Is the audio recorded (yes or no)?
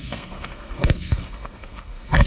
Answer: no